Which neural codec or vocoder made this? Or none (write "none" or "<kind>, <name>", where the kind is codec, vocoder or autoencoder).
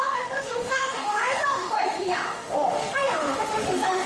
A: autoencoder, DAC-VAE